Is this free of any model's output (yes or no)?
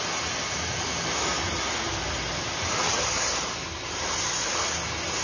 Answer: yes